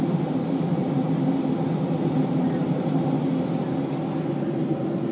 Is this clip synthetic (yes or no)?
no